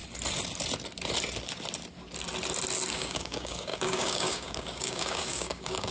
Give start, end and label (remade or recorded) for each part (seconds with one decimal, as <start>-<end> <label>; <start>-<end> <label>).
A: 0.0-2.9 recorded; 2.9-5.9 remade